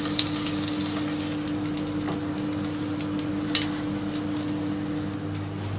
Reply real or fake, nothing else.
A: real